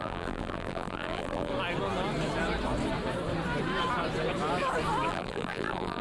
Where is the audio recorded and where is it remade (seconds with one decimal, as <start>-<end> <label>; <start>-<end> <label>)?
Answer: 0.0-1.5 remade; 1.5-5.1 recorded; 5.1-6.0 remade